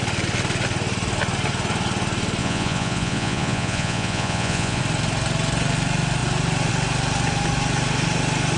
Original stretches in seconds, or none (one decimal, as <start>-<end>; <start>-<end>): 0.0-2.4; 4.8-8.6